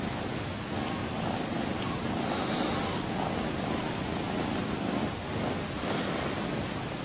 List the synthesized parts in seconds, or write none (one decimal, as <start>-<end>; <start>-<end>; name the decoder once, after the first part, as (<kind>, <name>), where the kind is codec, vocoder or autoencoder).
1.0-2.3 (vocoder, BigVGAN v2)